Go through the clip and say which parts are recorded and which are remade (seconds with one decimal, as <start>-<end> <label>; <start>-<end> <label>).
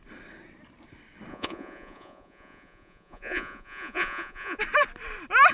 0.0-1.3 recorded; 1.3-4.6 remade; 4.6-5.5 recorded